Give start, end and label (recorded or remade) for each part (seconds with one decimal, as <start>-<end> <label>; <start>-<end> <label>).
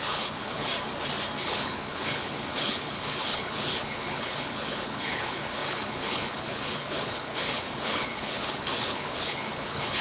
0.0-0.7 remade; 0.7-1.4 recorded; 1.4-10.0 remade